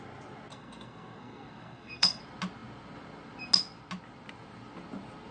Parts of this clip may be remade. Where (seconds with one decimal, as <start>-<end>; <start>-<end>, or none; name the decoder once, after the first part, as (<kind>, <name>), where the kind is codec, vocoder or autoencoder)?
0.5-2.2 (codec, SNAC)